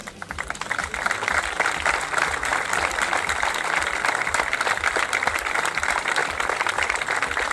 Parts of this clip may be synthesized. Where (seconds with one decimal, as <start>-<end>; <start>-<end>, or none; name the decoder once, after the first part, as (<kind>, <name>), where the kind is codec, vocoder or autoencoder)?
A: 2.5-5.7 (vocoder, BigVGAN v2); 6.2-6.7